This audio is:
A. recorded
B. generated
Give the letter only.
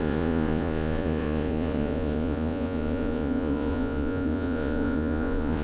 B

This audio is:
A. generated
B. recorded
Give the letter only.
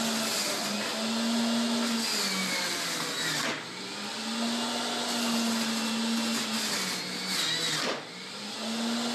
B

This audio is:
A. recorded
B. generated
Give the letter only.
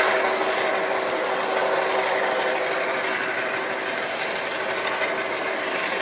A